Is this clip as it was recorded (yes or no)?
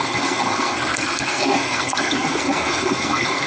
no